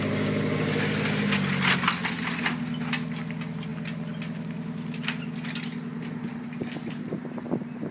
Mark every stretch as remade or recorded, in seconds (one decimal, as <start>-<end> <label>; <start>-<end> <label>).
0.0-7.9 recorded